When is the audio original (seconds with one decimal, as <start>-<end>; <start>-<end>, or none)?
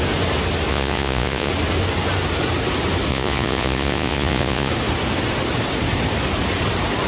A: 0.0-0.7; 1.5-3.1; 4.7-7.1